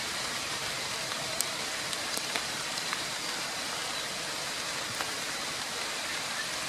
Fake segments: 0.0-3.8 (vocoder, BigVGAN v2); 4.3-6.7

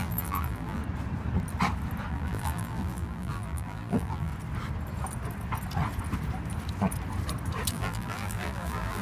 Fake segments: 0.0-0.8 (vocoder, BigVGAN v2); 2.1-4.3; 7.7-9.0

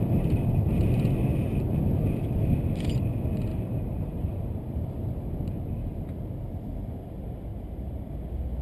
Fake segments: 3.5-5.3 (vocoder, BigVGAN v2); 7.5-8.1

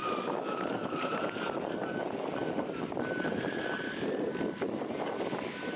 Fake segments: 2.4-3.8 (vocoder, BigVGAN v2)